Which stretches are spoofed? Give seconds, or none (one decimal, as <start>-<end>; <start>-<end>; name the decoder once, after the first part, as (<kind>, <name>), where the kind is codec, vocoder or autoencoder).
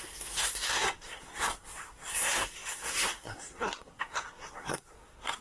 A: 0.0-5.4 (codec, SNAC)